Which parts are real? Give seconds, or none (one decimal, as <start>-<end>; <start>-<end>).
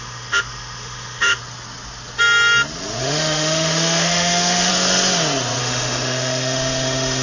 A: 1.4-3.0; 4.7-5.6